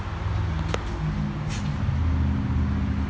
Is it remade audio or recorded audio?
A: recorded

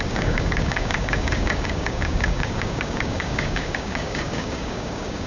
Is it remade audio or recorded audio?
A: remade